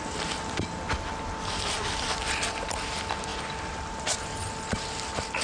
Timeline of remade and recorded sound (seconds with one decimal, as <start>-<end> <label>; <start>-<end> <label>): 0.0-5.4 recorded